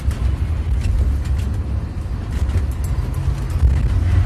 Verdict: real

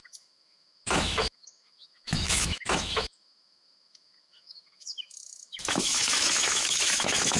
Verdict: fake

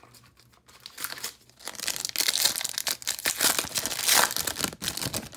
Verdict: real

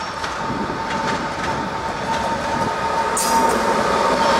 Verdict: real